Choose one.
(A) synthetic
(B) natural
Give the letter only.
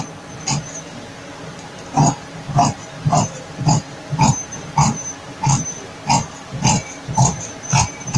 B